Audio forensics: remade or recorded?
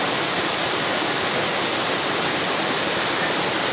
recorded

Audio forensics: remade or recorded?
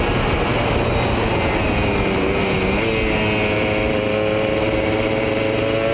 recorded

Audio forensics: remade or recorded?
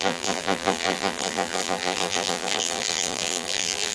remade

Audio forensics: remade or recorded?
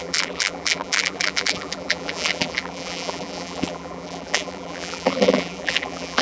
remade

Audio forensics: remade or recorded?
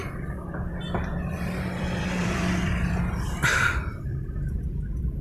remade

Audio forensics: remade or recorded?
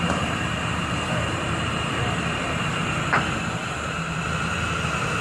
remade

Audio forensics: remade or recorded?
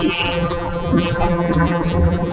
remade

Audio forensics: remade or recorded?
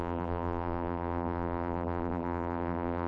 remade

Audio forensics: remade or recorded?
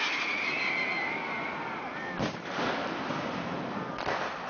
remade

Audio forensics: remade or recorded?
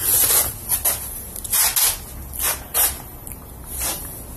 recorded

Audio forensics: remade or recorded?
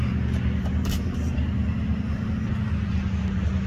recorded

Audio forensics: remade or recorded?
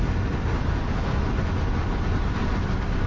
recorded